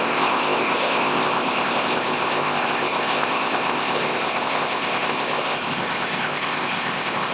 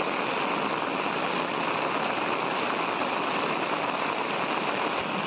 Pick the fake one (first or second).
first